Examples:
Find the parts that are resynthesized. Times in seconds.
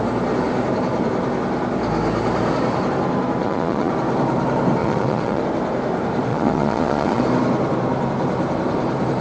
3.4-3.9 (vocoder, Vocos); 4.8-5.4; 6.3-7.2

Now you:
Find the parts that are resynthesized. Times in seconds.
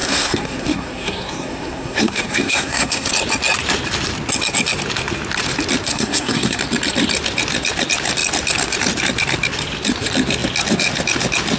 0.0-3.1 (codec, SNAC); 5.9-6.6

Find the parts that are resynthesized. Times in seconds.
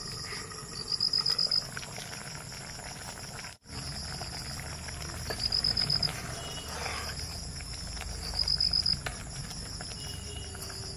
none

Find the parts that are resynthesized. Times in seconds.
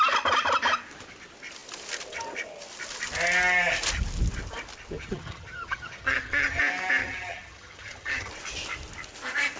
5.0-6.6 (vocoder, HiFi-GAN); 7.0-8.3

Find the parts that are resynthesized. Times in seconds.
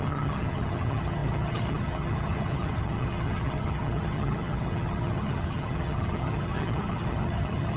0.0-7.8 (vocoder, HiFi-GAN)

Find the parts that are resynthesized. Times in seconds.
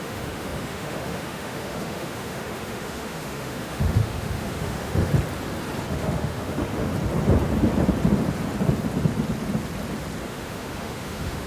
0.0-5.1 (autoencoder, DAC-VAE); 5.9-6.9; 10.2-11.5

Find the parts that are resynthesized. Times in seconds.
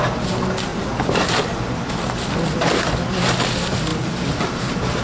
0.7-1.8 (vocoder, BigVGAN v2); 3.9-5.0